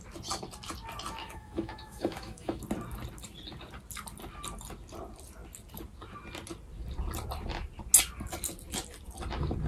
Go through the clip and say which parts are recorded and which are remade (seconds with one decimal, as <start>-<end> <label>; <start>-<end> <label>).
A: 0.0-1.2 recorded; 1.2-2.6 remade; 2.6-9.7 recorded